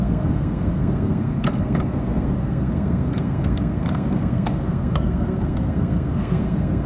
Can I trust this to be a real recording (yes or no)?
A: no